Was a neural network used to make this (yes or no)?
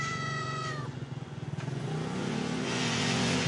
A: yes